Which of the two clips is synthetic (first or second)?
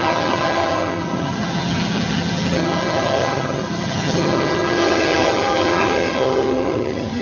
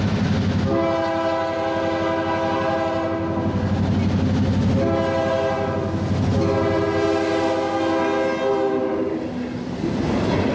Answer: first